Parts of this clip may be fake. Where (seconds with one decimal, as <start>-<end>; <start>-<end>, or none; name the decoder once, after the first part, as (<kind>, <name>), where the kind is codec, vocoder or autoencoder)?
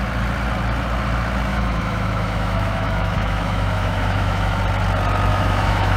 1.5-4.6 (autoencoder, DAC-VAE); 5.3-6.0